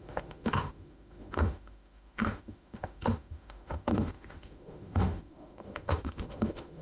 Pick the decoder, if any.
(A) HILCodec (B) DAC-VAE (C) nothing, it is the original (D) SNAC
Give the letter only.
B